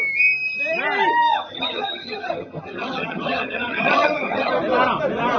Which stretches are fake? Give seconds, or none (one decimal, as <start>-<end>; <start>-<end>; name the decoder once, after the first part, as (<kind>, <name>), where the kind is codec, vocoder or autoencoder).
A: 1.3-4.5 (vocoder, HiFi-GAN)